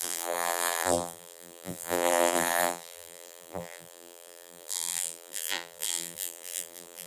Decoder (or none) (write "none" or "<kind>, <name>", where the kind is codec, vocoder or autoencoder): vocoder, BigVGAN v2